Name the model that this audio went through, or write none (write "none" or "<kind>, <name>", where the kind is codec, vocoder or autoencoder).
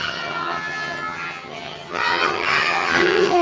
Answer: vocoder, HiFi-GAN